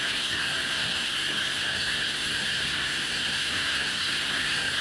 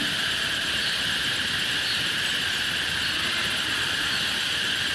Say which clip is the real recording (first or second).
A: second